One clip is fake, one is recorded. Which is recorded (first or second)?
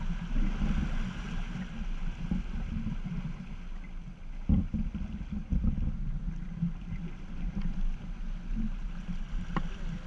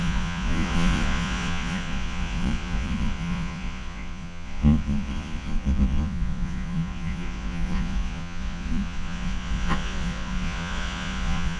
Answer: first